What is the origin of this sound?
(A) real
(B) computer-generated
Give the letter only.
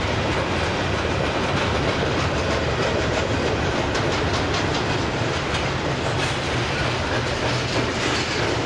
A